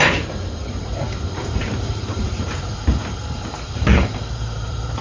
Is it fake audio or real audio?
fake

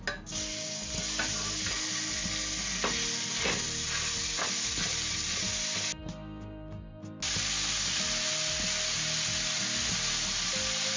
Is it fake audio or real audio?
real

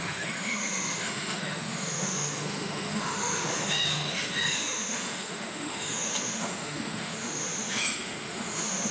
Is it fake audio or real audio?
fake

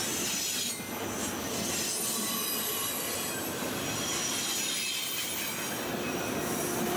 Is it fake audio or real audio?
real